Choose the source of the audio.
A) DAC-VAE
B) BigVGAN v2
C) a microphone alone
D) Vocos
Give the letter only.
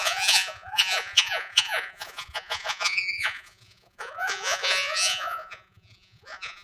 D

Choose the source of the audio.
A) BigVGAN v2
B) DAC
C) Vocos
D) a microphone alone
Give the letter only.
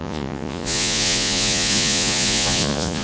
C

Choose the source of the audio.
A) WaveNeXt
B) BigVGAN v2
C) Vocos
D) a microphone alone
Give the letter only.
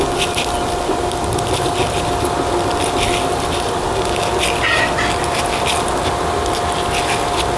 D